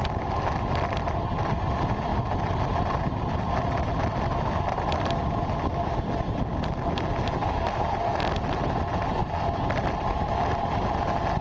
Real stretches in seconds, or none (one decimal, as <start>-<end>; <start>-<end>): 0.0-11.4